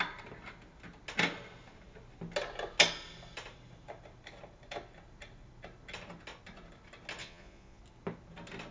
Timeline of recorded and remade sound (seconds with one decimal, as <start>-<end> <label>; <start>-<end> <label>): 0.0-7.2 recorded; 7.2-7.8 remade; 7.8-8.7 recorded